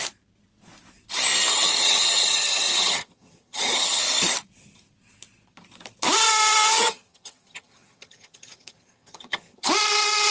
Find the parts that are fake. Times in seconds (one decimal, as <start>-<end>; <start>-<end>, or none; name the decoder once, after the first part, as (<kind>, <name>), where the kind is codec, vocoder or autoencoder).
1.5-4.0 (vocoder, HiFi-GAN); 6.7-9.7